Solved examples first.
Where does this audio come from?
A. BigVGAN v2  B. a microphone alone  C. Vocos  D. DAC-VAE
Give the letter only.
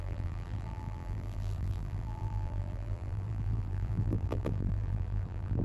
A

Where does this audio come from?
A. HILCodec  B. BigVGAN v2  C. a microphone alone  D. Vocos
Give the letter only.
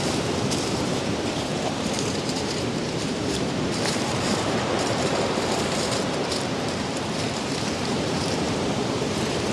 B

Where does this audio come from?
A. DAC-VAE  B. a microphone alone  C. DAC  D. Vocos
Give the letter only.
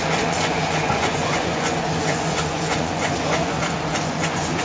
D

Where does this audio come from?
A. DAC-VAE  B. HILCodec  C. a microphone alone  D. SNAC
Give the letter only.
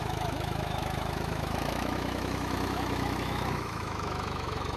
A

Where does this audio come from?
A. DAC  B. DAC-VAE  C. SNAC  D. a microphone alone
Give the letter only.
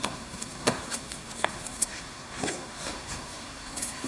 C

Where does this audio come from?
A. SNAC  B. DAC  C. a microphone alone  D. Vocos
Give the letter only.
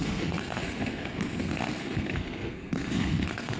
A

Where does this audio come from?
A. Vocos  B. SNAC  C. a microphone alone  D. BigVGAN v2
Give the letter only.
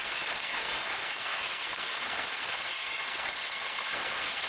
B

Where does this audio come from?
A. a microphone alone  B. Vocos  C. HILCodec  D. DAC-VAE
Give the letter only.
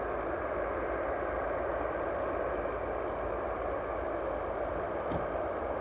A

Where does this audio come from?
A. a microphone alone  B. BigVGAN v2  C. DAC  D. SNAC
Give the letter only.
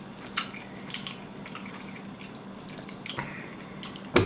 A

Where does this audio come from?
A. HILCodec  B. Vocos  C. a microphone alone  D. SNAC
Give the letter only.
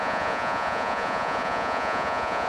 B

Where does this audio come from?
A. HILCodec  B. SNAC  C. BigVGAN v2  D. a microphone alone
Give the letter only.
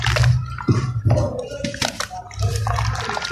D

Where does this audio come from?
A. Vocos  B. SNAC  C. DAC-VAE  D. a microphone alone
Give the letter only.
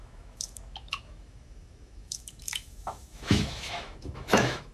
C